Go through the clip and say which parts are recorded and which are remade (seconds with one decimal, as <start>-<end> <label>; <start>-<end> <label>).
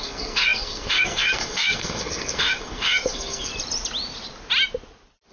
0.0-3.5 remade; 3.5-5.3 recorded